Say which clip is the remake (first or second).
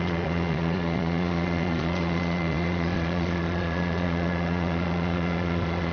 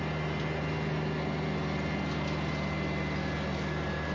first